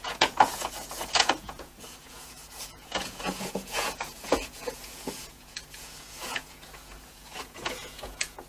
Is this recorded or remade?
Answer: remade